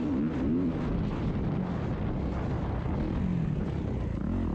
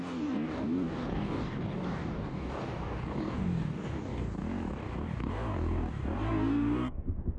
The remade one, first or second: second